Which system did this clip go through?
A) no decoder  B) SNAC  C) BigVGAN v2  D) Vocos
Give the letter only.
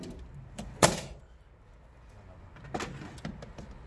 A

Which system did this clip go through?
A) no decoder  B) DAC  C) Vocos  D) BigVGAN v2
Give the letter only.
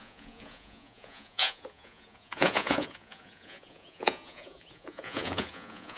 C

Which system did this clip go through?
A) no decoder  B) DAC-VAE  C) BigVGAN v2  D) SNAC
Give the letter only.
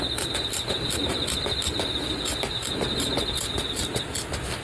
A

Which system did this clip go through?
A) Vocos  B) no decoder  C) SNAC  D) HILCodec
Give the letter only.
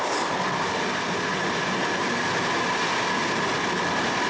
B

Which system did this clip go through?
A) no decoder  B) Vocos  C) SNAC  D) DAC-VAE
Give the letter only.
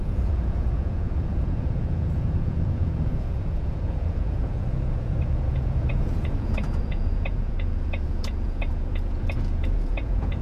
B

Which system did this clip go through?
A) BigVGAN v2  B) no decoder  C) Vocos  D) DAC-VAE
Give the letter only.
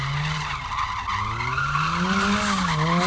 B